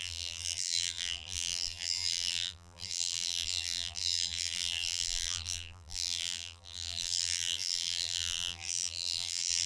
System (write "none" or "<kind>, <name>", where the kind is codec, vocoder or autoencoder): vocoder, BigVGAN v2